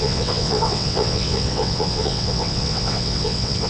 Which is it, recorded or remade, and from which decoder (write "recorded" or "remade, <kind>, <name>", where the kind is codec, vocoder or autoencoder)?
remade, vocoder, WaveNeXt